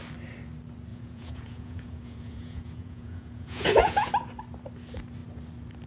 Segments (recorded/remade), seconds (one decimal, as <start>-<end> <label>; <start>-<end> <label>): 0.0-0.9 recorded; 0.9-4.1 remade; 4.1-5.9 recorded

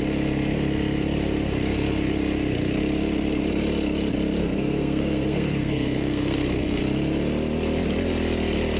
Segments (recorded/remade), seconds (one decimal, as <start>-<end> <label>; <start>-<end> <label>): 0.0-4.4 recorded; 4.4-6.8 remade; 6.8-8.8 recorded

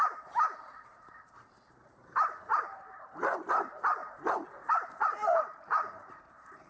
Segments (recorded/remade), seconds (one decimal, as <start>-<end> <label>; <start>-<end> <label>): 0.0-6.7 remade

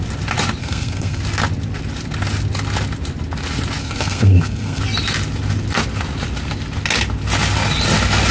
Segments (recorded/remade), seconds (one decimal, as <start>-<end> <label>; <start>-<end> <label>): 0.0-0.6 recorded; 0.6-1.2 remade; 1.2-3.8 recorded; 3.8-4.8 remade; 4.8-8.3 recorded

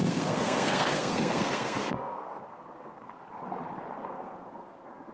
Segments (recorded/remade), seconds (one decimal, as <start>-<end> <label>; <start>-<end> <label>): 0.0-3.1 remade; 3.1-4.0 recorded; 4.0-5.1 remade